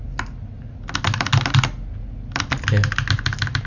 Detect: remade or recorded recorded